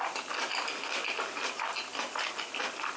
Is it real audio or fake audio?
real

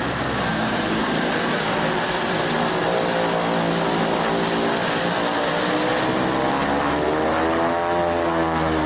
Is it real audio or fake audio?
real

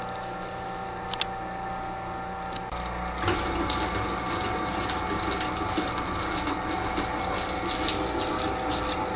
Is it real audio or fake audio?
real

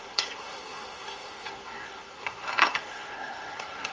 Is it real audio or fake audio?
fake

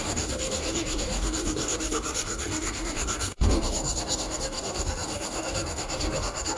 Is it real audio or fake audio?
fake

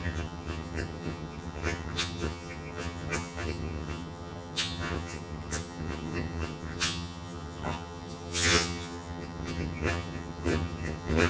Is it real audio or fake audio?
fake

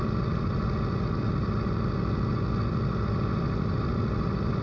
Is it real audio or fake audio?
real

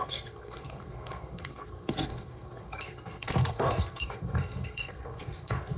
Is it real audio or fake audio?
fake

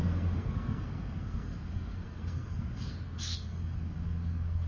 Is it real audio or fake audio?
fake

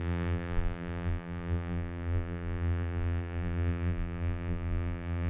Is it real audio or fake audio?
fake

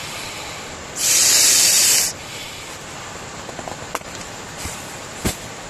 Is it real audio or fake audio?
fake